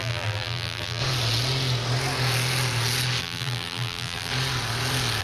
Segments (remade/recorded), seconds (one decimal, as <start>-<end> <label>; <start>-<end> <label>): 0.0-1.0 remade; 1.0-3.2 recorded; 3.2-4.3 remade; 4.3-5.2 recorded